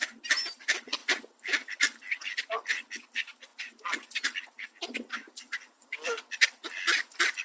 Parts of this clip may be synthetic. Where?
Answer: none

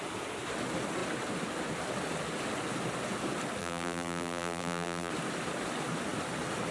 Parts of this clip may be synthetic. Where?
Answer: 3.6-5.1 (vocoder, BigVGAN v2)